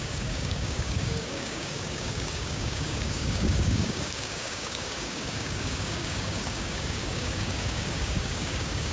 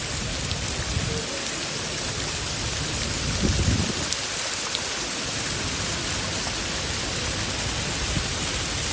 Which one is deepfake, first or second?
first